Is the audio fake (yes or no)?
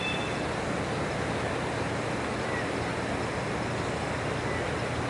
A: no